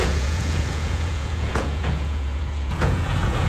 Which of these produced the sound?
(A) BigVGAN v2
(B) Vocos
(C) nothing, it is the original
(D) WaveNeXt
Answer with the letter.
B